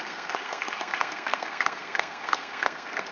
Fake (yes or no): yes